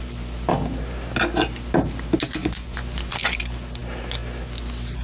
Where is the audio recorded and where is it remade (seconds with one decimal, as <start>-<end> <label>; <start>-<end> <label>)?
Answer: 0.0-2.4 recorded; 2.4-3.1 remade; 3.1-5.0 recorded